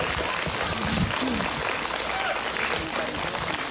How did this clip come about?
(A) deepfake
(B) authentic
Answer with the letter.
B